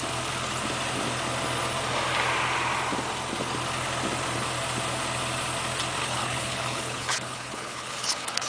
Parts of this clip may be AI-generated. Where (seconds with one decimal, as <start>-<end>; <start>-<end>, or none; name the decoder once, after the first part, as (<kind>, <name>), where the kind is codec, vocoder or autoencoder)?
6.0-8.5 (codec, HILCodec)